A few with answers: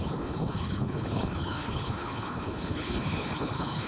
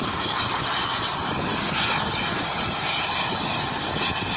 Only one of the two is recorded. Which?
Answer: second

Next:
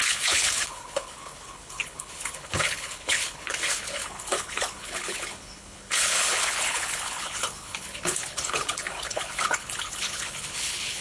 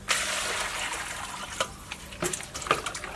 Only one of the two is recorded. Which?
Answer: second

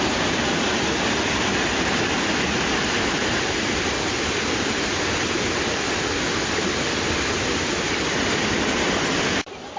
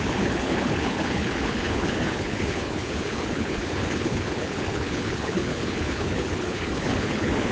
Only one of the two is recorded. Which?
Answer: first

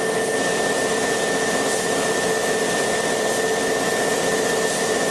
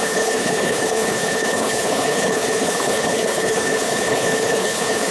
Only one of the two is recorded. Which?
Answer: first